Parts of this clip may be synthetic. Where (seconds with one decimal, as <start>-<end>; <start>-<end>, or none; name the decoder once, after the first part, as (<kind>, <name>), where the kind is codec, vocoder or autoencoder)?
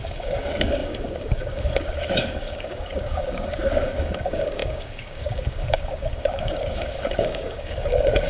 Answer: 0.0-8.3 (codec, DAC)